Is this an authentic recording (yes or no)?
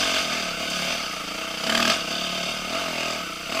yes